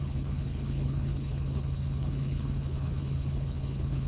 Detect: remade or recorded remade